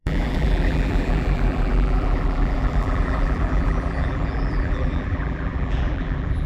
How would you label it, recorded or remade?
remade